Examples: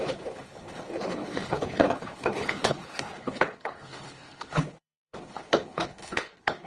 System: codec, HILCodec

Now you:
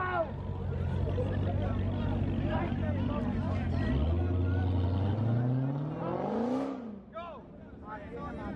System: none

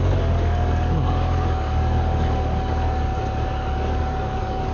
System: codec, DAC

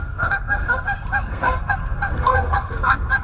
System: codec, SNAC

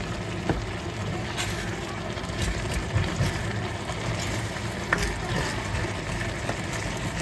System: none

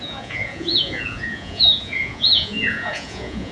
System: vocoder, Vocos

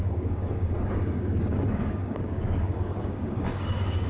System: codec, DAC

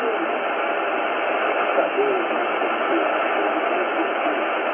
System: none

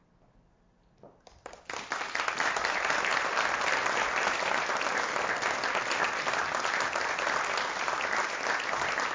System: none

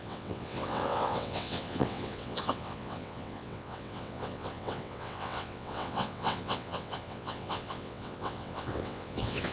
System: vocoder, WaveNeXt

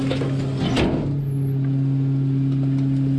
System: none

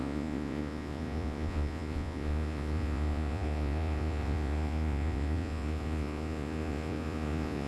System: vocoder, Vocos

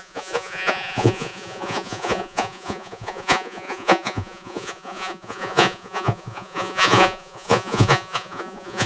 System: vocoder, Vocos